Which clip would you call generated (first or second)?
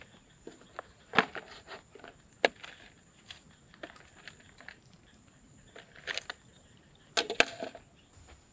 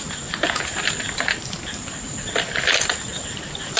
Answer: second